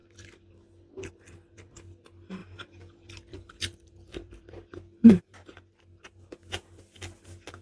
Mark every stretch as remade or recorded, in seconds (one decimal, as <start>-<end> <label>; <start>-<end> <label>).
0.0-2.4 recorded; 2.4-5.2 remade; 5.2-7.6 recorded